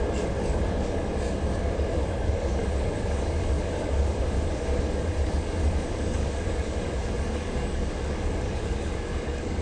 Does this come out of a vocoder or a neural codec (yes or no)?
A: yes